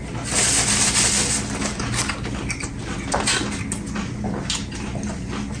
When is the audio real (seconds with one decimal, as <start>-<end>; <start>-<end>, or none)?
0.0-5.6